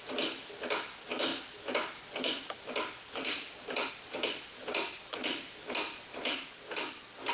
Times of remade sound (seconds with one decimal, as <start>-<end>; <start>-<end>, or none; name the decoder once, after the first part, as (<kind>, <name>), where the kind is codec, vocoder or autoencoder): none